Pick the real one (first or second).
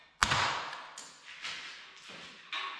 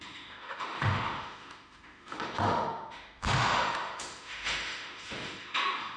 first